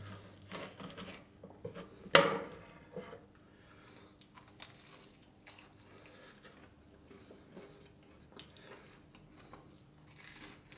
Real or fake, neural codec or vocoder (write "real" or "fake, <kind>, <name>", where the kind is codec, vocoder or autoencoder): real